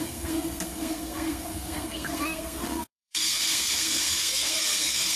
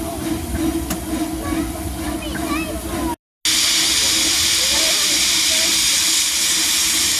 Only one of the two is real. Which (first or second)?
second